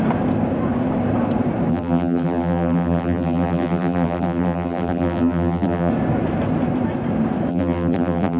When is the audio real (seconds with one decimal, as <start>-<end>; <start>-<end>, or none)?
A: 0.0-1.7; 5.9-7.5